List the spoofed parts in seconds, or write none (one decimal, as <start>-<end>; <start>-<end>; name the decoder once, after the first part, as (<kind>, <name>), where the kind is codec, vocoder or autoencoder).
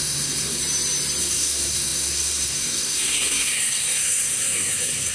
0.0-0.6 (codec, SNAC); 1.2-5.1